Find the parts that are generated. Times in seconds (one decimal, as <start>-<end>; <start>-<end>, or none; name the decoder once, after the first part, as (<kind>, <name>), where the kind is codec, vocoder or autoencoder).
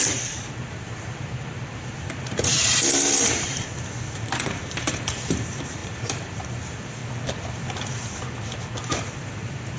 0.0-7.0 (vocoder, BigVGAN v2); 8.8-9.8